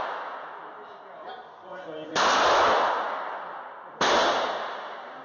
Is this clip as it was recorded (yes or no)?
yes